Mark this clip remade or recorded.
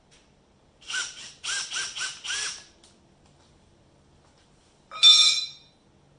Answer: recorded